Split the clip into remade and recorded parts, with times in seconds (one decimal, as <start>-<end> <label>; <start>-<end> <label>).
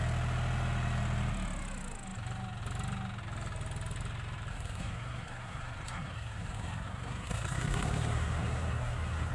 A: 0.0-4.5 recorded; 4.5-9.3 remade